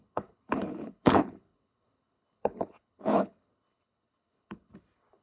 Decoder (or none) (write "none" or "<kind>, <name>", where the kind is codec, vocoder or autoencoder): codec, HILCodec